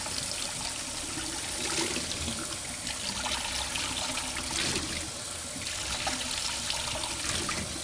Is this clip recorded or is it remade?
recorded